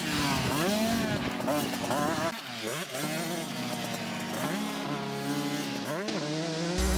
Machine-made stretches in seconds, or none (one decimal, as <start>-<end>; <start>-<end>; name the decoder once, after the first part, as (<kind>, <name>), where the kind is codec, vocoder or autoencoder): none